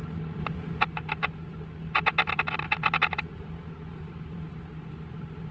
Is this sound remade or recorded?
recorded